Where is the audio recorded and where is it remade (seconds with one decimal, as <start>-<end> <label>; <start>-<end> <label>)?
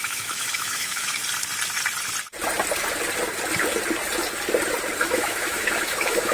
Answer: 0.0-1.2 remade; 1.2-5.0 recorded; 5.0-6.3 remade